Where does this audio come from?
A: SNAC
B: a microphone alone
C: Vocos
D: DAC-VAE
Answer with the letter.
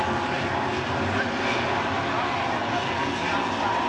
B